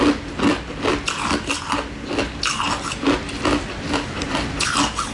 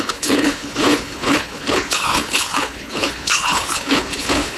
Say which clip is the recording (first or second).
first